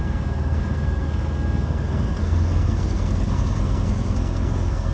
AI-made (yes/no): yes